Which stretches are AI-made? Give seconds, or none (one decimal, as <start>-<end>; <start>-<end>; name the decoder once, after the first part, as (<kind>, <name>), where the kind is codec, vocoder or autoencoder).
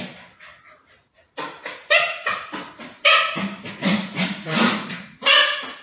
3.8-4.9 (vocoder, Vocos)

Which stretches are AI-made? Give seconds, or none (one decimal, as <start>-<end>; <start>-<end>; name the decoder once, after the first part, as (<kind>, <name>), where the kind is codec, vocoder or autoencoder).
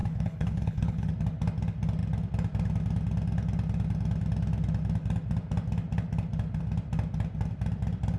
0.0-1.1 (codec, HILCodec)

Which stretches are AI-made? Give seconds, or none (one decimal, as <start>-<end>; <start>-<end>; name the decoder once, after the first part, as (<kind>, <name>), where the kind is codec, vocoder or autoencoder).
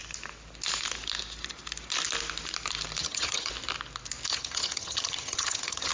3.0-3.5 (vocoder, HiFi-GAN); 4.3-5.9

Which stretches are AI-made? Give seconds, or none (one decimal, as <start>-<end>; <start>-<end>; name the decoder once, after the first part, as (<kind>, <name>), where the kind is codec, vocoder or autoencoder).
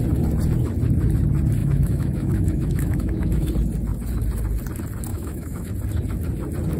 1.6-3.5 (autoencoder, DAC-VAE); 5.1-5.7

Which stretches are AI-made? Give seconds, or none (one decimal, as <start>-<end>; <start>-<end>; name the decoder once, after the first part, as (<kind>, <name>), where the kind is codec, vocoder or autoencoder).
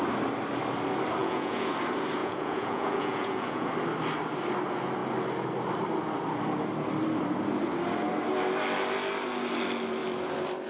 1.2-1.7 (vocoder, Vocos); 2.2-3.7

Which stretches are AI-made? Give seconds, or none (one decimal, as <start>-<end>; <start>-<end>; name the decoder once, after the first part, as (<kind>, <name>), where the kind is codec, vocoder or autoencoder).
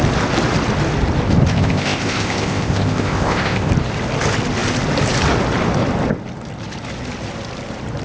1.5-3.7 (codec, ZipCodec)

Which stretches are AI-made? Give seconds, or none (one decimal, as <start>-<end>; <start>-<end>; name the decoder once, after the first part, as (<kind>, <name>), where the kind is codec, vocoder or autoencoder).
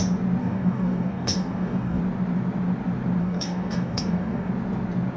0.4-2.0 (codec, DAC); 3.2-4.5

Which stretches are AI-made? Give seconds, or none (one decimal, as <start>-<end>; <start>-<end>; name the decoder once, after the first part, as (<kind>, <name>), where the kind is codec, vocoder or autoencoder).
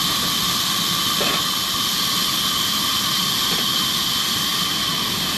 none